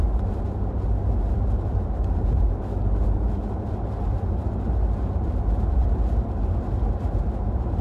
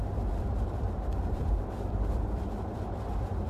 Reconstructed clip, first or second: second